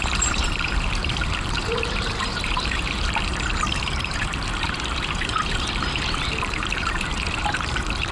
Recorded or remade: remade